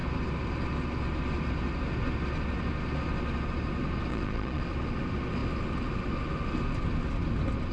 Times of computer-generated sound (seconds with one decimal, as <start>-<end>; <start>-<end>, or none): 4.1-4.6